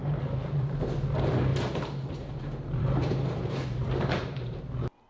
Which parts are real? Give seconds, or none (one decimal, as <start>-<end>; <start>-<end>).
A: 0.8-1.5; 4.6-5.1

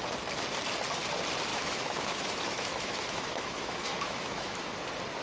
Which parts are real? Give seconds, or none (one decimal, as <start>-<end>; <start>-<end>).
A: 0.0-1.5; 4.6-5.2

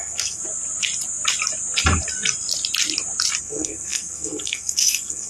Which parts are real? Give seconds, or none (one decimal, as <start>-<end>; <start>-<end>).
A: 0.4-3.4

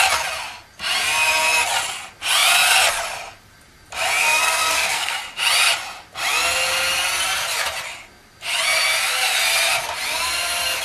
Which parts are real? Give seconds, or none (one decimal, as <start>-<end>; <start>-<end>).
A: 0.0-4.2; 5.2-10.8

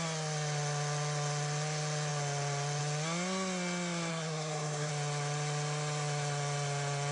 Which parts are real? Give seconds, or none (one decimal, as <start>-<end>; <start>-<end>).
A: 0.0-4.1; 4.9-7.1

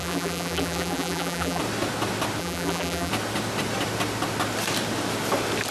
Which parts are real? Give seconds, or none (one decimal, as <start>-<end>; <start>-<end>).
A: 1.6-2.4; 3.1-5.7